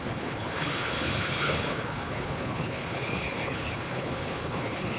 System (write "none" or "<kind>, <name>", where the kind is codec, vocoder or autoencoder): codec, HILCodec